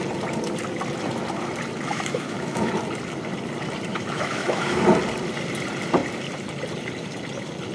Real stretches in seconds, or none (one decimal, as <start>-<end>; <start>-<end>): 0.0-1.9; 2.7-3.9; 4.8-7.7